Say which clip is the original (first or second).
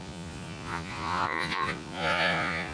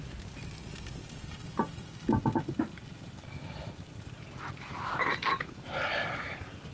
second